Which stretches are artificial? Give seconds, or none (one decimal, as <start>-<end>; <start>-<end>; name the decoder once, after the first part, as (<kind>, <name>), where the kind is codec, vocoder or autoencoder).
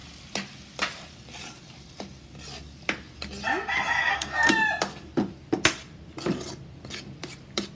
4.0-4.5 (codec, SNAC)